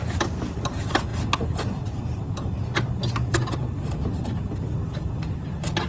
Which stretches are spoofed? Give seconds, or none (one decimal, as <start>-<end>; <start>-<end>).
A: none